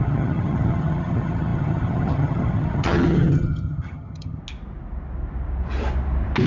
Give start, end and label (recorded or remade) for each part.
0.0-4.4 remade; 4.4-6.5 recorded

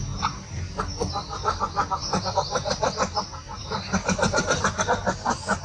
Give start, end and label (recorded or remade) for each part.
0.0-5.6 recorded

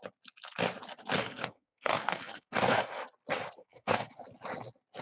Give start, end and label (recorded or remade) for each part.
0.0-1.2 recorded; 1.2-3.0 remade; 3.0-3.6 recorded; 3.6-4.1 remade; 4.1-5.0 recorded